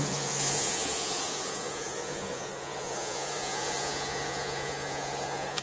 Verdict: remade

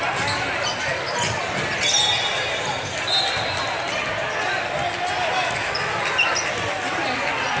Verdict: recorded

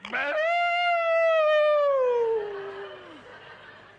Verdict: recorded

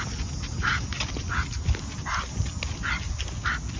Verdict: recorded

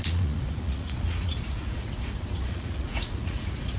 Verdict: remade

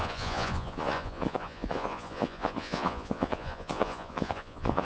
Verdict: remade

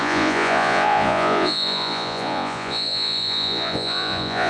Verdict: remade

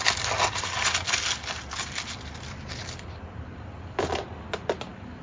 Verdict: recorded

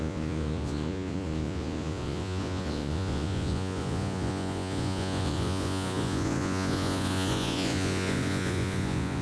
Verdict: remade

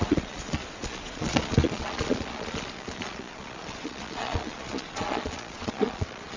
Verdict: remade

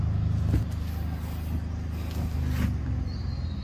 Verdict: recorded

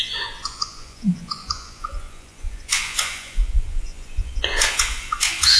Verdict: remade